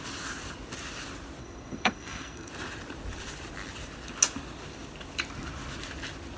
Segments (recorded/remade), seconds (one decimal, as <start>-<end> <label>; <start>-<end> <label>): 0.0-1.4 recorded; 1.4-2.5 remade; 2.5-6.4 recorded